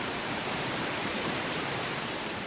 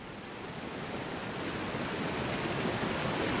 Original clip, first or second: second